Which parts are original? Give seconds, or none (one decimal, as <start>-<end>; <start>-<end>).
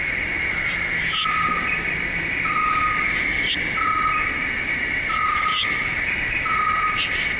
0.0-2.6; 3.5-5.3; 6.0-7.4